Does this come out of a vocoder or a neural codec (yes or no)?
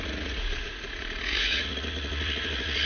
yes